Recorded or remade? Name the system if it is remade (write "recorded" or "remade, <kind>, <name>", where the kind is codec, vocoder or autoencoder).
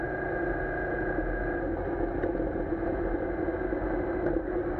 recorded